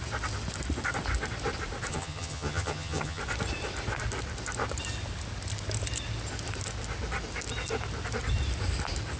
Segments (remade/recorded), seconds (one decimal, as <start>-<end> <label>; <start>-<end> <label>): 0.0-1.9 recorded; 1.9-3.2 remade; 3.2-9.2 recorded